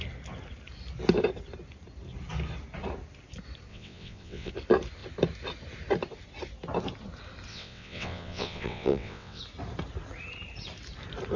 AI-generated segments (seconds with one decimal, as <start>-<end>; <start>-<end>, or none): 3.7-4.5; 7.5-9.4